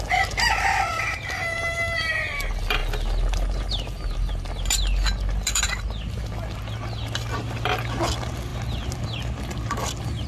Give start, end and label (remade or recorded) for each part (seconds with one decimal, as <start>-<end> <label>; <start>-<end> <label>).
0.0-10.3 recorded

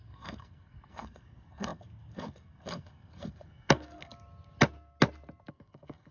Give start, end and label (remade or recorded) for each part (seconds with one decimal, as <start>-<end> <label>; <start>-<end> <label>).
0.0-4.1 remade; 4.1-5.5 recorded; 5.5-6.1 remade